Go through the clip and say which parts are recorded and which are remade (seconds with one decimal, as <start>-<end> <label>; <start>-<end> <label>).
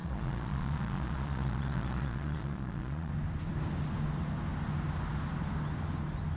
0.0-3.1 remade; 3.1-6.4 recorded